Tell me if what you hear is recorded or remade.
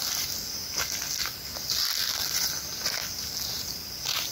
recorded